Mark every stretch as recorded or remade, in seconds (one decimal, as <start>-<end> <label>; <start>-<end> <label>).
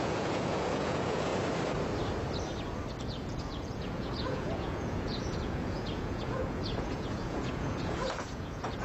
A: 0.0-1.3 remade; 1.3-3.0 recorded; 3.0-8.8 remade